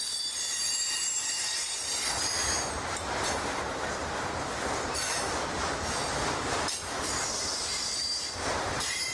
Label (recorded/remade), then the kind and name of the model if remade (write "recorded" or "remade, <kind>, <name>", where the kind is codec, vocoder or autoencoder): remade, vocoder, BigVGAN v2